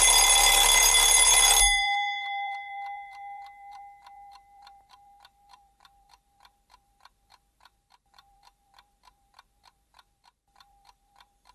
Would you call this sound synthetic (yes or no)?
yes